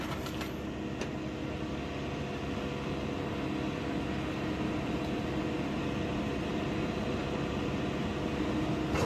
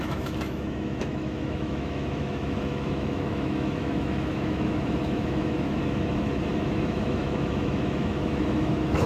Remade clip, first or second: second